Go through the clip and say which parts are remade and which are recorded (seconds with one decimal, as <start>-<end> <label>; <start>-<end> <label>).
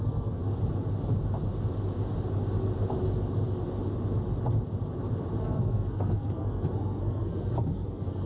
0.0-0.4 remade; 0.4-5.4 recorded; 5.4-8.3 remade